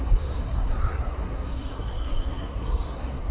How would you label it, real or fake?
fake